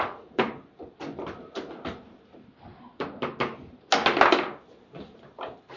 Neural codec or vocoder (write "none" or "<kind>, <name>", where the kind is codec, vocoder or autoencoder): none